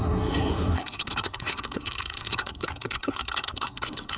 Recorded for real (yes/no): no